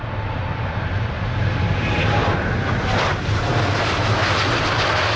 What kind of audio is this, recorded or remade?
recorded